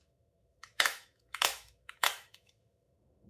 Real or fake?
fake